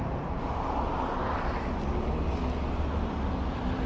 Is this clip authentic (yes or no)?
yes